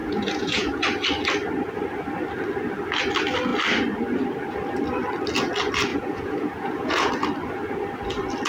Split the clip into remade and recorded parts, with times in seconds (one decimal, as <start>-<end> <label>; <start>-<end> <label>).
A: 0.0-0.8 remade; 0.8-5.9 recorded; 5.9-7.1 remade; 7.1-8.5 recorded